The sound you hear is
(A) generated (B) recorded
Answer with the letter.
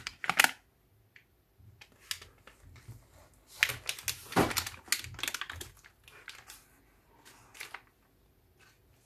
B